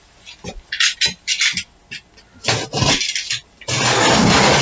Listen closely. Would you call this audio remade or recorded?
recorded